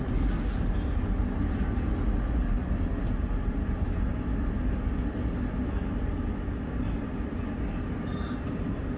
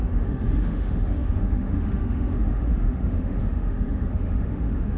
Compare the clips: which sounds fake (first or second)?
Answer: second